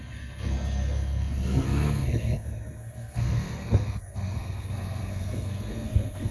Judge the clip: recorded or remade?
remade